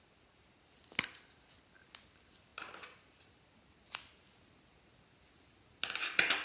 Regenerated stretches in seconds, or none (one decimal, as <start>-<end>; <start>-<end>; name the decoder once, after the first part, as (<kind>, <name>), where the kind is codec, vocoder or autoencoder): none